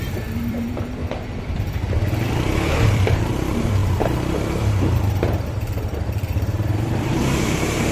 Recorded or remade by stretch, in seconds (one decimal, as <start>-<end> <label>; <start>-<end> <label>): 0.0-1.0 remade; 1.0-2.8 recorded; 2.8-7.9 remade